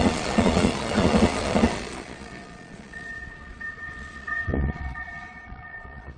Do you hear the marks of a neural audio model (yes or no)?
yes